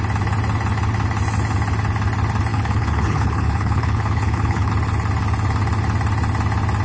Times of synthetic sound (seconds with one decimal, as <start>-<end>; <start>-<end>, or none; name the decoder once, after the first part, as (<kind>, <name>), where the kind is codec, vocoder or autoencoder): 2.5-4.7 (codec, HILCodec)